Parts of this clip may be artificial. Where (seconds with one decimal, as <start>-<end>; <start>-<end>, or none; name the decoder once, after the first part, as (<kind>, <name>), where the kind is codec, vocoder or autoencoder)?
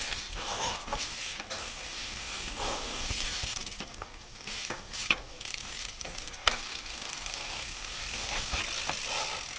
0.0-8.6 (codec, DAC)